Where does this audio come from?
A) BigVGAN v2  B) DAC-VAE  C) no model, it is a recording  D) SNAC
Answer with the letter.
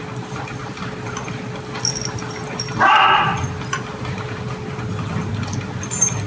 C